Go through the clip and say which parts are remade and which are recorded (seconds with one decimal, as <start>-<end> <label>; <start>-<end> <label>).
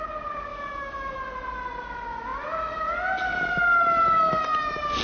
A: 0.0-0.5 recorded; 0.5-1.2 remade; 1.2-5.0 recorded